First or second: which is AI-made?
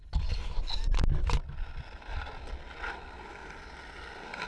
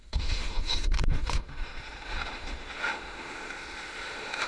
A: second